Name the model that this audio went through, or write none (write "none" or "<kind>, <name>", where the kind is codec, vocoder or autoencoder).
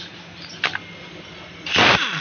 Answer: none